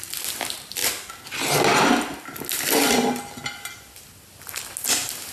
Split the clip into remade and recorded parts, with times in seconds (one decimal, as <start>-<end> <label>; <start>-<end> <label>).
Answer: 0.0-5.3 recorded